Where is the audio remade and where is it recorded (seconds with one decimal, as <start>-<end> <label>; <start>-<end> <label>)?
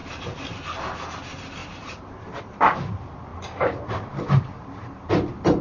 0.0-1.6 recorded; 1.6-2.4 remade; 2.4-3.3 recorded; 3.3-5.1 remade; 5.1-5.6 recorded